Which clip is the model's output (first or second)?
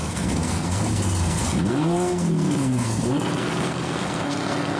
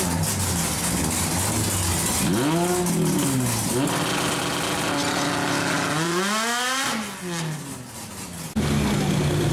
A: first